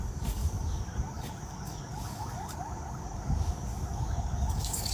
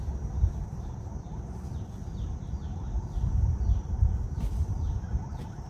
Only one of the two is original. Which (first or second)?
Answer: second